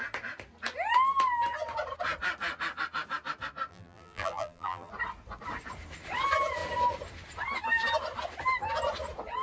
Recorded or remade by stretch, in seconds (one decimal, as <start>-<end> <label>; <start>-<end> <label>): 0.0-3.7 recorded; 3.7-4.9 remade; 4.9-9.4 recorded